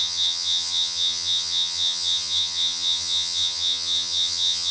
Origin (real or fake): fake